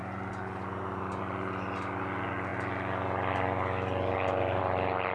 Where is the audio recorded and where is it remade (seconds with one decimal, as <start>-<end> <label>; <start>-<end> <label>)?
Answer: 0.0-5.1 recorded